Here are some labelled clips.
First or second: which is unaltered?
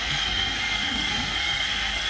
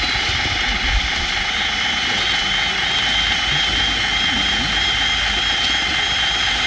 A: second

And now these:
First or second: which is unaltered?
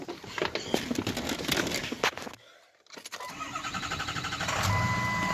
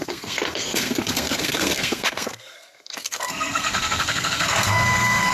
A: first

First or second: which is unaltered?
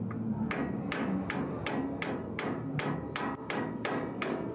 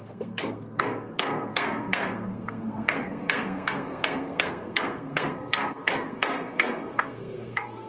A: first